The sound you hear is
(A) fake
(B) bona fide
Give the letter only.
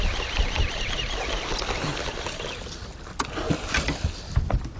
B